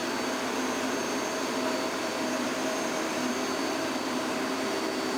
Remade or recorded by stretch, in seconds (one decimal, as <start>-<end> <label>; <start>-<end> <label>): 0.0-0.5 remade; 0.5-1.0 recorded; 1.0-4.1 remade; 4.1-5.2 recorded